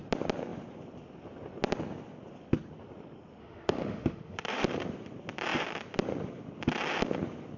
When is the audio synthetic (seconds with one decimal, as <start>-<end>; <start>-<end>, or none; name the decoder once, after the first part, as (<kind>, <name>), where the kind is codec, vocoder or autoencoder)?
3.4-4.6 (autoencoder, DAC-VAE)